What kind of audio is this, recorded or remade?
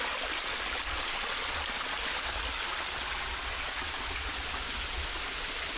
recorded